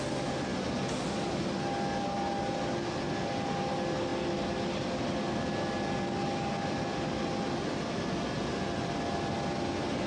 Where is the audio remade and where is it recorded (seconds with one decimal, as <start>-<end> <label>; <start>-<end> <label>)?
0.0-10.1 recorded